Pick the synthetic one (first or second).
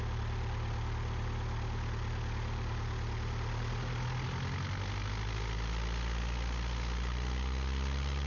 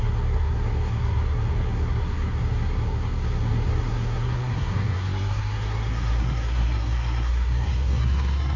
second